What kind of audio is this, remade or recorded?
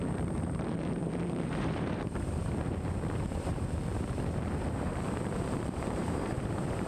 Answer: remade